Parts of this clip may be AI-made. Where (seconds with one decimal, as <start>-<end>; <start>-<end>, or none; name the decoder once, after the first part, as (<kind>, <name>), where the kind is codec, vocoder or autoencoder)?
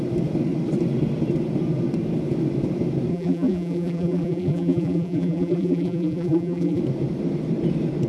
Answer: 3.1-6.8 (vocoder, BigVGAN v2)